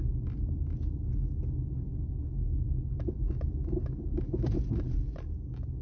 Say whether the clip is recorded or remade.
recorded